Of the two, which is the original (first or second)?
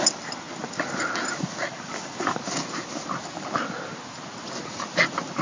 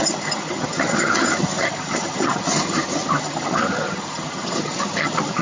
first